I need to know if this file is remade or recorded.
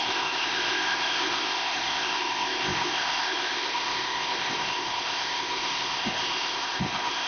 remade